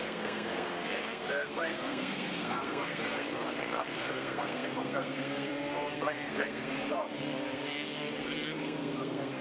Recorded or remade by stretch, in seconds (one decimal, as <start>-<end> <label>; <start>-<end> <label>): 0.0-9.4 remade